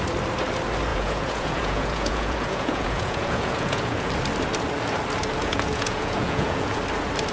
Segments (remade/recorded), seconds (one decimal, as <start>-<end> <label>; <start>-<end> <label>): 0.0-0.9 recorded; 0.9-4.1 remade; 4.1-5.4 recorded; 5.4-6.8 remade; 6.8-7.3 recorded